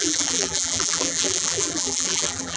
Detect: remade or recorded remade